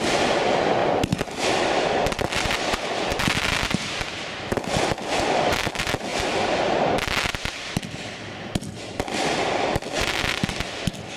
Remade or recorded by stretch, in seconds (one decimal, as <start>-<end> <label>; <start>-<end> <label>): 0.0-11.2 recorded